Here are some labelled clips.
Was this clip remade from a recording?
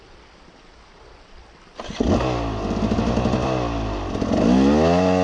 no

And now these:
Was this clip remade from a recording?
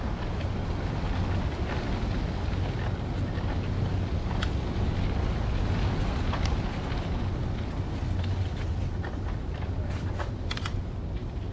no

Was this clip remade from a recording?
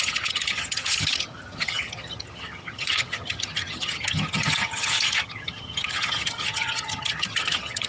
yes